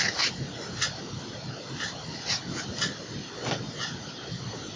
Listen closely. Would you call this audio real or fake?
real